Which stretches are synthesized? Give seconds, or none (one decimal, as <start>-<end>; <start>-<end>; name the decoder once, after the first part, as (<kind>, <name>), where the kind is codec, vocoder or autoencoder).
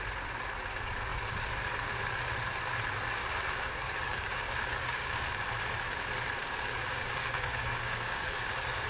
3.2-5.4 (codec, DAC); 6.4-8.5